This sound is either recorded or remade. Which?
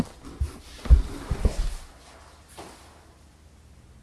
recorded